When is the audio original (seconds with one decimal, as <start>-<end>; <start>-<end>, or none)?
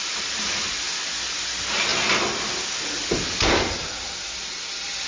0.0-5.1